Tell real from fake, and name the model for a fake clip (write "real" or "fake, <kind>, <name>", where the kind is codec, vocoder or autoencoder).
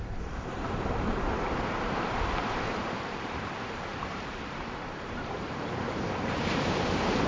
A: fake, vocoder, BigVGAN v2